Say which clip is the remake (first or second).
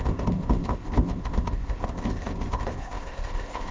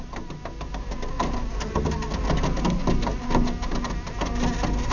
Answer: first